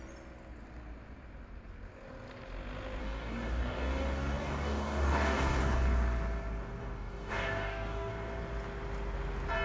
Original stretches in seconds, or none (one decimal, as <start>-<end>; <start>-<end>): 0.0-3.0; 5.6-6.8; 8.1-9.6